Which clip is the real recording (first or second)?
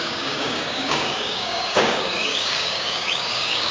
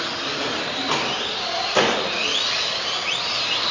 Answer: second